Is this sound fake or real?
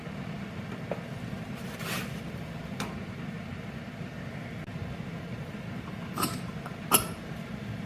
real